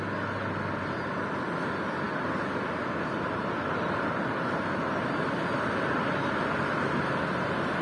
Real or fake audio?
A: real